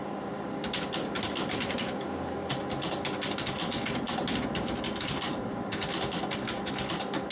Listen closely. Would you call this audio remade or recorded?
recorded